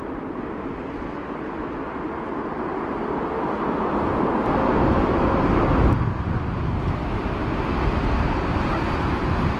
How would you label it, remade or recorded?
recorded